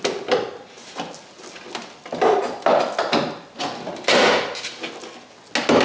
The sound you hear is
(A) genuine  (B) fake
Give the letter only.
A